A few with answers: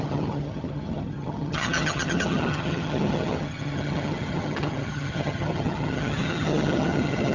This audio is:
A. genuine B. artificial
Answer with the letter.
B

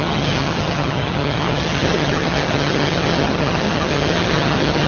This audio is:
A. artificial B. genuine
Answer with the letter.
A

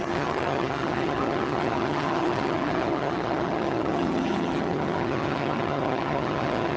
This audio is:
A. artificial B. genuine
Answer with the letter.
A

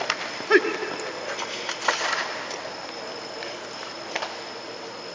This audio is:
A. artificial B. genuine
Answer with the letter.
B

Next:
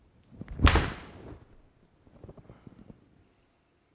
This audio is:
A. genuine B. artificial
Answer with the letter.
A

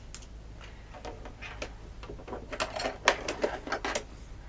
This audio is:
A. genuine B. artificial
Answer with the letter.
A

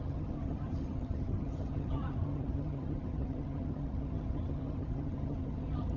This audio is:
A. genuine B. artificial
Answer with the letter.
B